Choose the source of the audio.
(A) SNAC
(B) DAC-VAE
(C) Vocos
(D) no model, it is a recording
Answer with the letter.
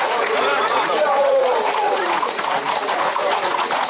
C